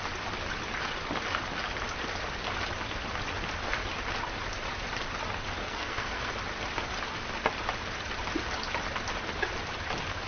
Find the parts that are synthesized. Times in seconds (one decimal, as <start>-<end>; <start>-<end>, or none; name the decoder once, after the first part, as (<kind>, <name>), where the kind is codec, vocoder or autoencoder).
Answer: 5.6-6.3 (codec, SNAC)